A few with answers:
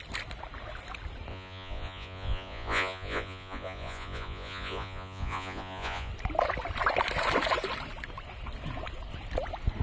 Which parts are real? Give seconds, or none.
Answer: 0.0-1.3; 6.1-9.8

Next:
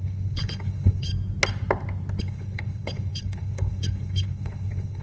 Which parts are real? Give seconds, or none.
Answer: 1.1-2.2

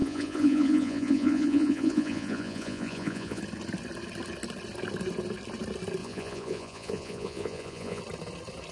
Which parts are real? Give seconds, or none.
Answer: 3.4-6.0; 8.0-8.7

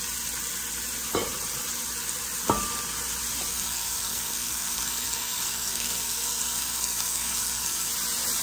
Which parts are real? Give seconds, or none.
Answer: 0.0-3.5; 7.9-8.4

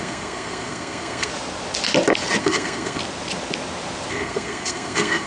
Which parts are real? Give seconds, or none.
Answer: 1.3-2.4; 3.0-4.1

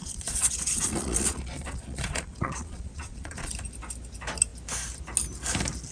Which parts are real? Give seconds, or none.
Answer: 3.5-5.9